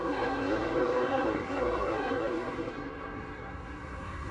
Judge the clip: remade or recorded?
remade